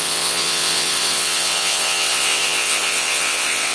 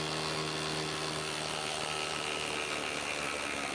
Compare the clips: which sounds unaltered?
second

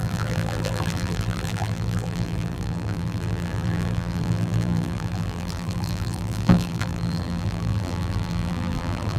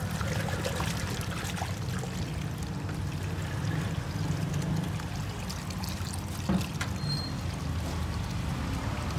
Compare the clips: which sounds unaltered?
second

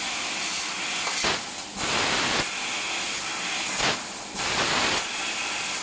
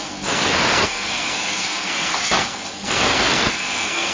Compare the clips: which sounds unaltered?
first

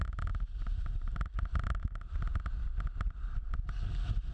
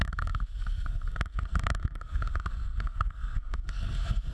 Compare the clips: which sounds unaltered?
first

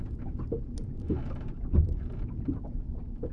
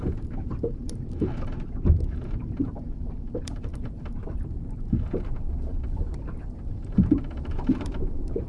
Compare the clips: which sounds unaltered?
first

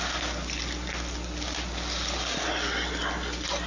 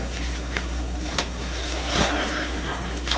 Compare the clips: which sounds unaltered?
first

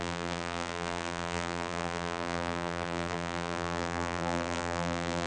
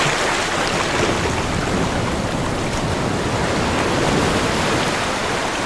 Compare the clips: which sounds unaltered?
second